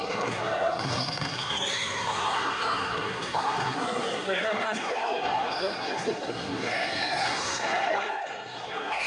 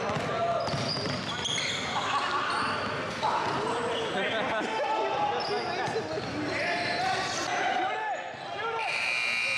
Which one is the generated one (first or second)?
first